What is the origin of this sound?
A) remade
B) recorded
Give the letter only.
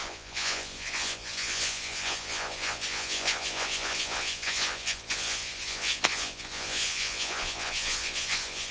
A